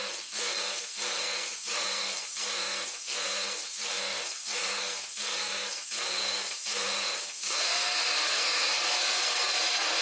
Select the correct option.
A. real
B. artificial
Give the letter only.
B